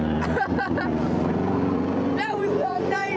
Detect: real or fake fake